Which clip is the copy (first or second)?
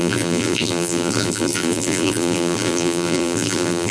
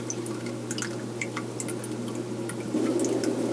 first